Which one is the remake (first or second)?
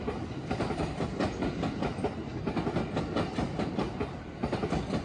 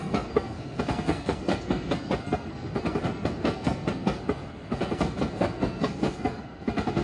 second